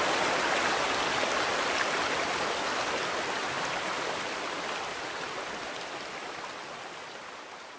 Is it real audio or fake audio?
real